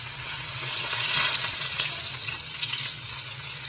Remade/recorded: remade